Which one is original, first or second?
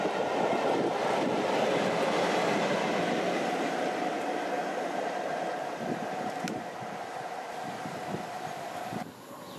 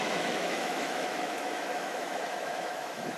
first